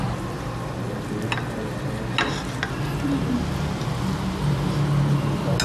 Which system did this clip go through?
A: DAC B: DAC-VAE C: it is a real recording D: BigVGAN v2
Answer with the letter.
C